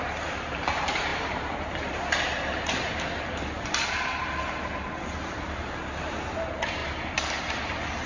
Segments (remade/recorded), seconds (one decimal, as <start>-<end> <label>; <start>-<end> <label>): 0.0-8.1 remade